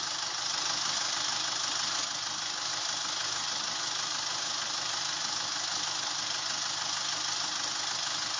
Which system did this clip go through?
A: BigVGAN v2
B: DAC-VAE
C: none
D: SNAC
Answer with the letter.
C